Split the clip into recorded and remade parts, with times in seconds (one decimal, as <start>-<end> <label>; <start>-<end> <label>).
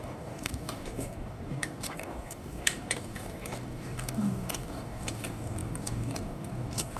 0.0-7.0 remade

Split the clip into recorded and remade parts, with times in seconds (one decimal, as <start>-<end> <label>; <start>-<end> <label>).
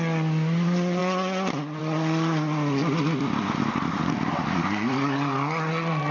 0.0-6.1 recorded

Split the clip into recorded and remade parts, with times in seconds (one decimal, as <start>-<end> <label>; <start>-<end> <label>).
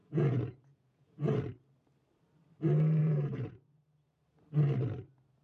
0.0-1.3 remade; 1.3-3.0 recorded; 3.0-3.8 remade; 3.8-5.4 recorded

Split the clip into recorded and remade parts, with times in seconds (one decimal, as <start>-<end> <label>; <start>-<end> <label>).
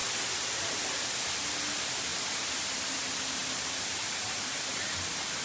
0.0-0.8 remade; 0.8-2.1 recorded; 2.1-3.0 remade; 3.0-5.4 recorded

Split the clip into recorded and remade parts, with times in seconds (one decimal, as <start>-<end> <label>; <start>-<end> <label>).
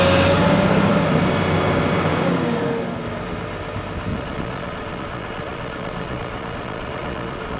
0.0-4.1 recorded; 4.1-7.6 remade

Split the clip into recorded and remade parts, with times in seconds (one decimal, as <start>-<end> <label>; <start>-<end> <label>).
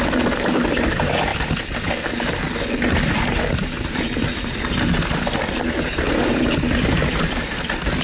0.0-8.0 recorded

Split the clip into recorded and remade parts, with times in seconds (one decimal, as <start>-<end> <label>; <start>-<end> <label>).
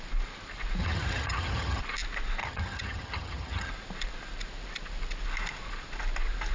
0.0-0.8 recorded; 0.8-1.8 remade; 1.8-2.4 recorded; 2.4-3.7 remade; 3.7-6.5 recorded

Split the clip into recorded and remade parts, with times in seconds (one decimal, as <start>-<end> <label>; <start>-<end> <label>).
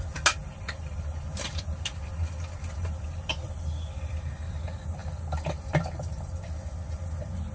0.0-7.5 recorded